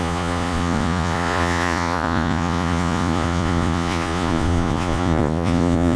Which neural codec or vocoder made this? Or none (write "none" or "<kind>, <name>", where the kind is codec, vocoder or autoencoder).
vocoder, Vocos